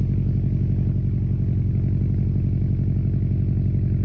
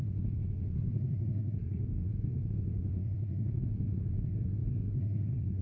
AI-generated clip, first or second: second